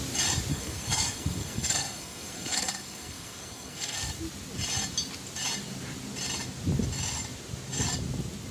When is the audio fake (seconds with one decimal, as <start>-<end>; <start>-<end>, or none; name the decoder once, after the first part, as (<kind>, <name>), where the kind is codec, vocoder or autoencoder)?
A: 0.5-4.1 (codec, SNAC)